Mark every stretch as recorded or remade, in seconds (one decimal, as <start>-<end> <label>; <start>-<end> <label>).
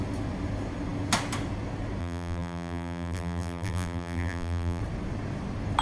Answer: 0.0-2.0 recorded; 2.0-4.8 remade; 4.8-5.8 recorded